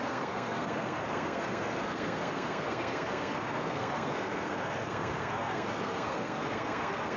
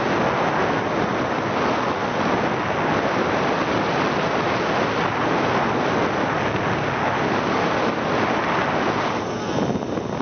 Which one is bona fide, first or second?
second